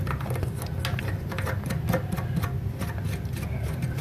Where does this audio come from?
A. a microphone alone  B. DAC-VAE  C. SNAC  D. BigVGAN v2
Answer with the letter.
A